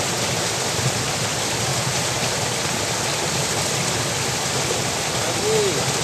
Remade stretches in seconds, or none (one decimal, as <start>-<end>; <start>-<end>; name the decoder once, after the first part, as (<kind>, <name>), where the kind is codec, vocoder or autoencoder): none